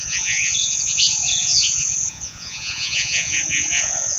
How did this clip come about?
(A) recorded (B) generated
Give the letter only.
B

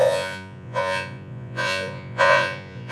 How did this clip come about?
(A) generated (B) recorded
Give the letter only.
A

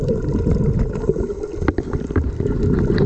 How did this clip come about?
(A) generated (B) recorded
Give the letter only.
B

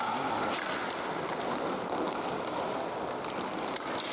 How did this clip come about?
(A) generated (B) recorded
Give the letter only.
B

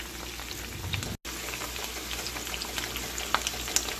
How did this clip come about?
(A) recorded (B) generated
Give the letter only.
A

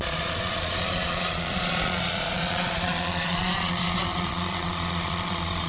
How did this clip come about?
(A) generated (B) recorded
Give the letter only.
A